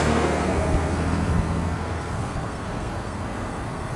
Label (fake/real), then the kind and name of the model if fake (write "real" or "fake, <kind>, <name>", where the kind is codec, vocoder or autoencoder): fake, codec, SNAC